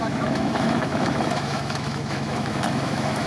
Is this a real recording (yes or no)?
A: no